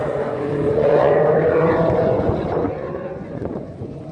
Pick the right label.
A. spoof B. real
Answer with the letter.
A